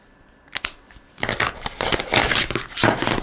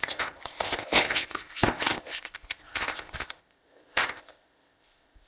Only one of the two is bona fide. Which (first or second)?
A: first